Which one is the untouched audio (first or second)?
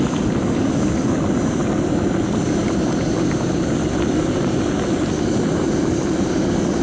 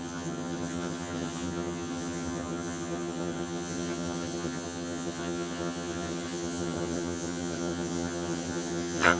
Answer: first